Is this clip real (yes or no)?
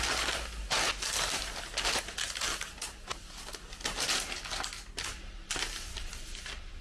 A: yes